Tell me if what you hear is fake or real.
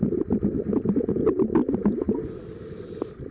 real